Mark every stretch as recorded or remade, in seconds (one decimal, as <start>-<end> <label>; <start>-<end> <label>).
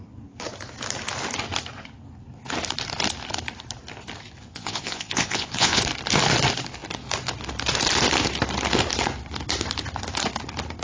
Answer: 0.0-4.5 recorded; 4.5-5.8 remade; 5.8-10.8 recorded